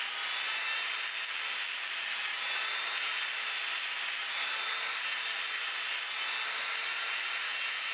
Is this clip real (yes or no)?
yes